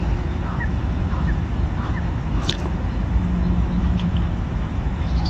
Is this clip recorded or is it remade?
remade